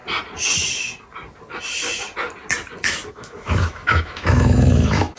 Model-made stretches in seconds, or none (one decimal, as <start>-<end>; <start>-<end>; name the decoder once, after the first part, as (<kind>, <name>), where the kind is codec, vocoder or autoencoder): 3.1-5.2 (autoencoder, DAC-VAE)